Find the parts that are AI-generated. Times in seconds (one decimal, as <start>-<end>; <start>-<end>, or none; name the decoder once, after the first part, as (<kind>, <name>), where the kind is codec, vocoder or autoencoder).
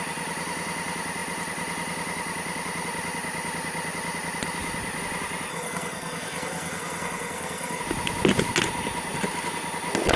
5.5-7.8 (codec, SNAC)